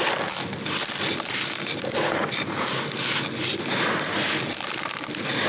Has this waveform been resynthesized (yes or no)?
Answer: no